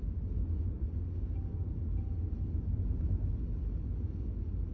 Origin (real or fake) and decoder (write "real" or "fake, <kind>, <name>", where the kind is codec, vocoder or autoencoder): real